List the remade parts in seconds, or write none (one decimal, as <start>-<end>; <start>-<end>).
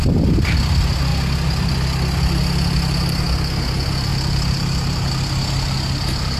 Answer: none